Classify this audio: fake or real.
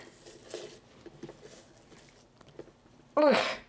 real